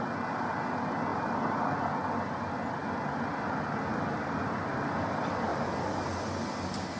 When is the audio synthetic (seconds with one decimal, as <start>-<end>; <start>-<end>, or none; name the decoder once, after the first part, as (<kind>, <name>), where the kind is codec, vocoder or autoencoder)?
1.1-1.8 (vocoder, BigVGAN v2); 5.5-6.1